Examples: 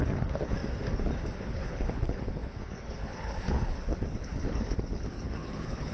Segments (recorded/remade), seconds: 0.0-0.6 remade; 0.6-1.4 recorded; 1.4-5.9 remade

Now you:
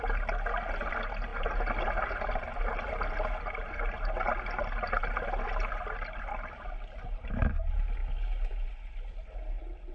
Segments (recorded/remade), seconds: 0.0-9.9 recorded

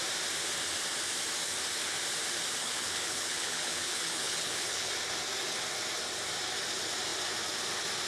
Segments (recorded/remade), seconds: 0.0-2.6 recorded; 2.6-4.9 remade; 4.9-8.1 recorded

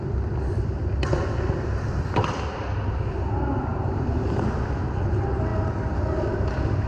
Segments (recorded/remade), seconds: 0.0-3.7 recorded; 3.7-4.4 remade; 4.4-6.9 recorded

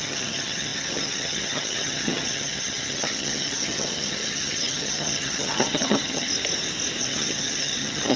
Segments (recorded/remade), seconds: 0.0-6.3 remade; 6.3-7.0 recorded; 7.0-8.2 remade

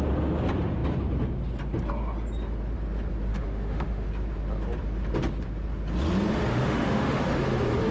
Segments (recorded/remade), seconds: 0.0-3.3 recorded; 3.3-4.1 remade; 4.1-6.5 recorded; 6.5-7.2 remade; 7.2-7.9 recorded